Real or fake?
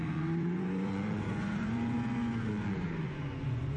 fake